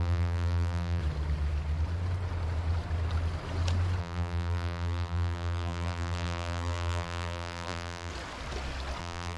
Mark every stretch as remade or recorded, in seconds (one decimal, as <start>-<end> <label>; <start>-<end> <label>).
0.0-1.0 remade; 1.0-4.0 recorded; 4.0-8.1 remade; 8.1-9.0 recorded; 9.0-9.4 remade